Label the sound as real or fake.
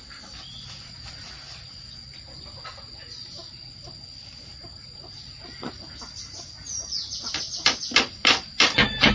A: real